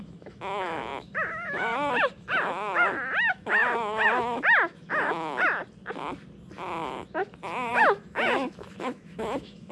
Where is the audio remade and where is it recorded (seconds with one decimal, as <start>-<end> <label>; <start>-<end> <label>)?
0.0-5.6 remade; 5.6-7.7 recorded; 7.7-9.7 remade

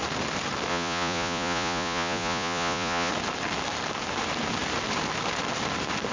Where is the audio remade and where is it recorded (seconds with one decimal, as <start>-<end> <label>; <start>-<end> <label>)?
0.0-0.7 recorded; 0.7-3.1 remade; 3.1-6.1 recorded

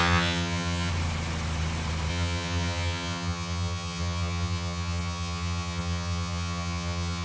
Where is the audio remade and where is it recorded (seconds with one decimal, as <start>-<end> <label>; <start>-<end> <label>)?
0.0-0.9 remade; 0.9-2.1 recorded; 2.1-7.2 remade

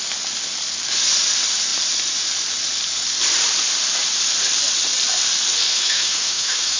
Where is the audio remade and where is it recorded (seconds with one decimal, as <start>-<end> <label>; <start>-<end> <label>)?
0.0-5.7 recorded; 5.7-6.8 remade

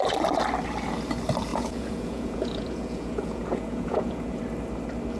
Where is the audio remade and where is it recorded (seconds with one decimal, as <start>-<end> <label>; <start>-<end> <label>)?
0.0-1.5 recorded; 1.5-4.4 remade; 4.4-5.2 recorded

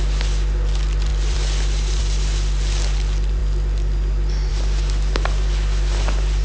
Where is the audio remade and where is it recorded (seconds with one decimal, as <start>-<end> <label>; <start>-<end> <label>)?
0.0-1.1 recorded; 1.1-2.0 remade; 2.0-6.4 recorded

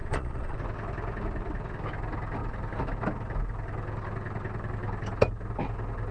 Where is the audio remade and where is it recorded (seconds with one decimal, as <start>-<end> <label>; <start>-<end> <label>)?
0.0-0.6 remade; 0.6-6.1 recorded

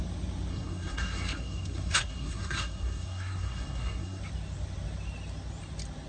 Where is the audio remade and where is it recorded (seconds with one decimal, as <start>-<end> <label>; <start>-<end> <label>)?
0.0-0.5 recorded; 0.5-4.2 remade; 4.2-6.1 recorded